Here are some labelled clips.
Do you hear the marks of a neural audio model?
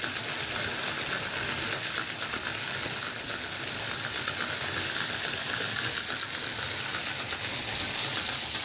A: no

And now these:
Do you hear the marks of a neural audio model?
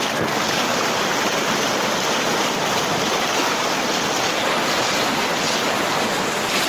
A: no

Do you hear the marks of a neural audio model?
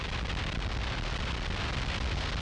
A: no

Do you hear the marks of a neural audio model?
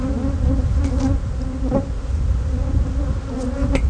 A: no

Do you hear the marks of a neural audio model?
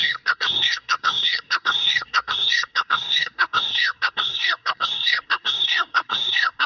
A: yes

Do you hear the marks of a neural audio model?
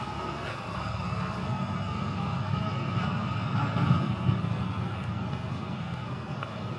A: yes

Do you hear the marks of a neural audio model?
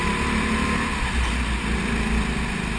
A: no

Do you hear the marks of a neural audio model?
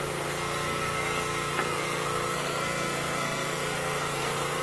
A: yes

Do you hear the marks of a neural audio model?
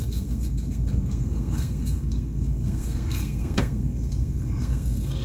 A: yes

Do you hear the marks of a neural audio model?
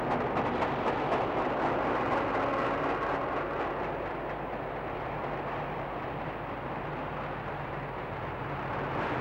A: no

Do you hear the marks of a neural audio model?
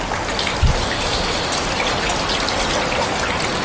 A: no